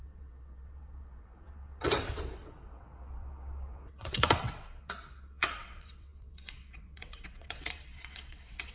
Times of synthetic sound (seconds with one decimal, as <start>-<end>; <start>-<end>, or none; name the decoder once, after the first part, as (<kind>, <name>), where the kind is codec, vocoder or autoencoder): 0.0-8.7 (vocoder, WaveNeXt)